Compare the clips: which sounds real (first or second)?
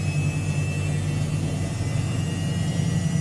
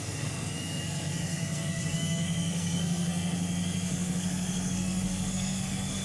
first